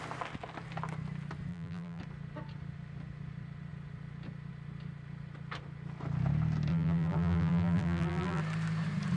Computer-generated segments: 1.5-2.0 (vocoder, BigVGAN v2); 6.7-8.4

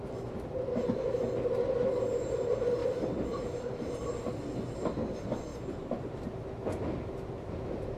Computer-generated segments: 2.8-4.3 (vocoder, BigVGAN v2); 5.5-6.3

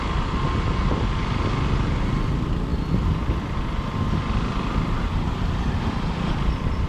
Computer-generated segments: none

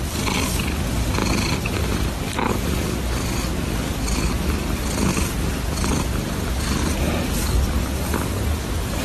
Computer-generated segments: none

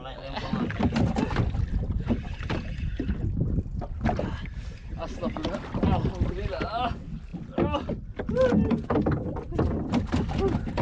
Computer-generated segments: none

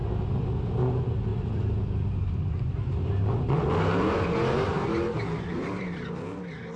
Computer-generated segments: 1.3-3.7 (vocoder, BigVGAN v2); 4.7-6.2

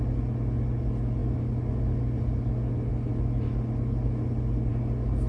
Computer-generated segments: none